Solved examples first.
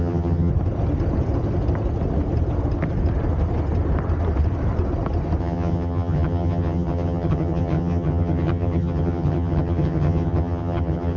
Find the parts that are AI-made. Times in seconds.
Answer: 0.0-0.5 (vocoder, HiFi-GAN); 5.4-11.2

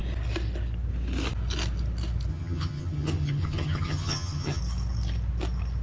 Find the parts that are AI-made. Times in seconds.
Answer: 2.3-4.6 (vocoder, HiFi-GAN)

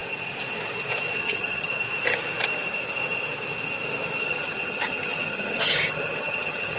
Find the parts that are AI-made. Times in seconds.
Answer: 1.2-1.7 (vocoder, HiFi-GAN); 4.2-6.8